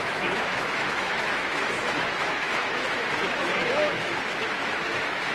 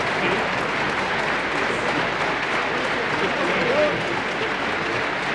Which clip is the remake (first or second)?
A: first